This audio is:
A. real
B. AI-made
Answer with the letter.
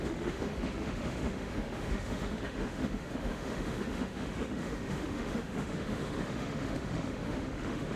B